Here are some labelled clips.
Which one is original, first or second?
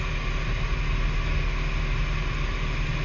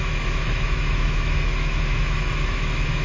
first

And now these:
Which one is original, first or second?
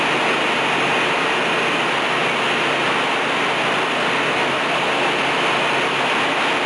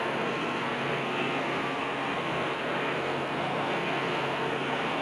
first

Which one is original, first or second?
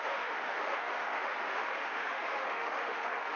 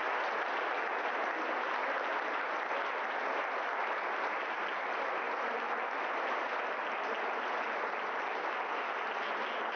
second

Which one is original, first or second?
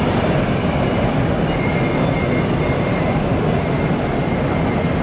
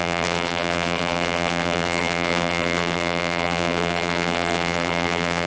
first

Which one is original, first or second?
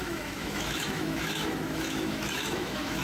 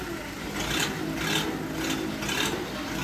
second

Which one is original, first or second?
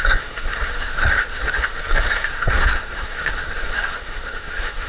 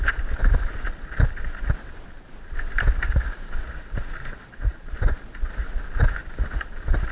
second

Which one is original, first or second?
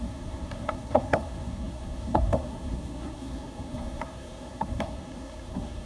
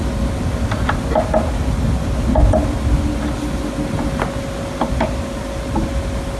second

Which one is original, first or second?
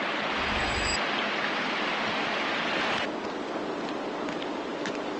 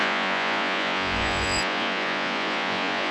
first